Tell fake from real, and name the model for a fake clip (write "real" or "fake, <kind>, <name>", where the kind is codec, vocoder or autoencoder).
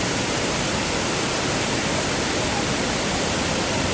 real